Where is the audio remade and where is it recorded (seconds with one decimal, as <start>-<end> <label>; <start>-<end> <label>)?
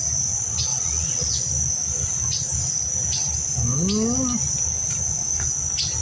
0.0-0.7 recorded; 0.7-1.3 remade; 1.3-6.0 recorded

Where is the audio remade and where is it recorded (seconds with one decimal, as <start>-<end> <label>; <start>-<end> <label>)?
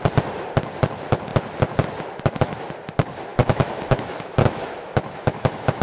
0.0-3.3 recorded; 3.3-5.8 remade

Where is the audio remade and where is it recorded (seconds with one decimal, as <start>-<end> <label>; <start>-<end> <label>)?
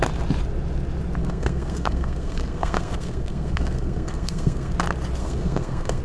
0.0-1.2 recorded; 1.2-4.7 remade; 4.7-5.2 recorded; 5.2-6.0 remade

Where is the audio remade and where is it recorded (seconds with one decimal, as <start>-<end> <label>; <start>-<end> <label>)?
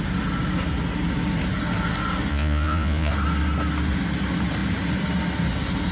0.0-2.3 recorded; 2.3-3.1 remade; 3.1-5.9 recorded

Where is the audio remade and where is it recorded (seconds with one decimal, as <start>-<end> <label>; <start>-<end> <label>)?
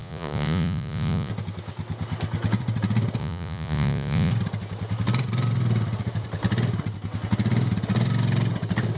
0.0-1.3 remade; 1.3-3.2 recorded; 3.2-4.3 remade; 4.3-9.0 recorded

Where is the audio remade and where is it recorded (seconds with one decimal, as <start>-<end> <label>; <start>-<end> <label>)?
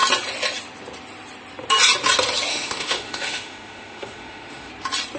0.0-2.5 recorded; 2.5-4.7 remade; 4.7-5.2 recorded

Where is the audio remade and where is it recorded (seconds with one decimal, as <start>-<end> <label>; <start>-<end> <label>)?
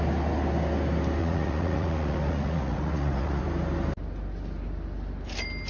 0.0-1.2 recorded; 1.2-3.4 remade; 3.4-5.7 recorded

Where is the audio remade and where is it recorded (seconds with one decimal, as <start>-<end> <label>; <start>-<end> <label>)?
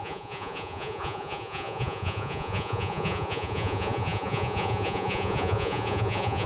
0.0-6.5 remade